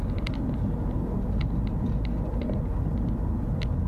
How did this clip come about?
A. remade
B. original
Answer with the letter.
B